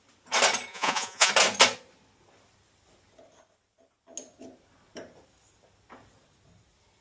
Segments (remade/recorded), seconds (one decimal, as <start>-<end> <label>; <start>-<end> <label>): 0.0-0.7 recorded; 0.7-1.3 remade; 1.3-7.0 recorded